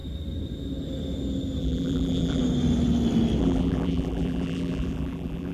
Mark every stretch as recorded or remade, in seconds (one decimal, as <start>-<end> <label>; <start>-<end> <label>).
0.0-1.6 recorded; 1.6-2.4 remade; 2.4-3.4 recorded; 3.4-5.5 remade